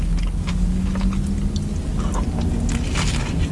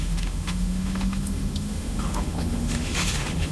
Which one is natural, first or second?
first